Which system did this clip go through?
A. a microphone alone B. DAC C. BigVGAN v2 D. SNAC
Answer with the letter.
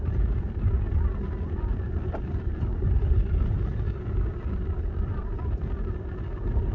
A